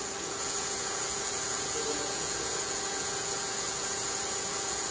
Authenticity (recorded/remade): remade